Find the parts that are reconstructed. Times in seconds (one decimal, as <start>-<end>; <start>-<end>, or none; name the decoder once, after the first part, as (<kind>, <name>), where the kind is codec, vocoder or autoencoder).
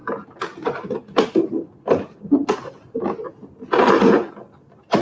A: none